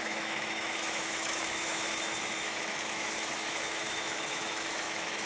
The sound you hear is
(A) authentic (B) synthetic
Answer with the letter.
B